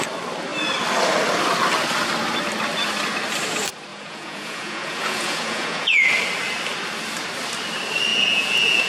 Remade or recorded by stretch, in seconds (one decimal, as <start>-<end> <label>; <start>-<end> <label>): 0.0-3.9 recorded; 3.9-6.1 remade; 6.1-8.1 recorded; 8.1-8.9 remade